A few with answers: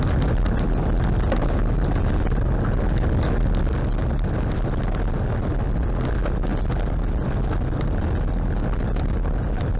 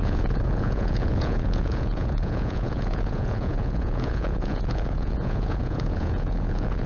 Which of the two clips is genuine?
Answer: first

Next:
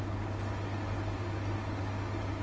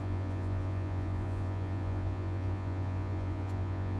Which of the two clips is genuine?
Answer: first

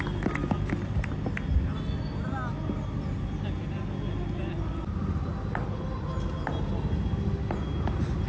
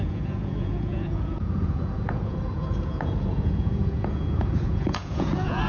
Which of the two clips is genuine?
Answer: first